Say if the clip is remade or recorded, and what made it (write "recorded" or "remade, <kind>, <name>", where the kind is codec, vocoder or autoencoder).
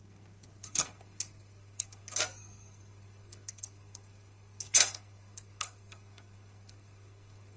remade, codec, SNAC